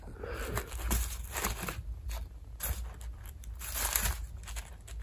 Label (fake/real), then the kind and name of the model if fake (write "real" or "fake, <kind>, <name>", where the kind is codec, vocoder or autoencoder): real